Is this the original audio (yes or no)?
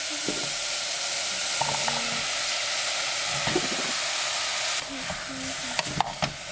yes